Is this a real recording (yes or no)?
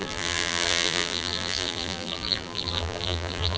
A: no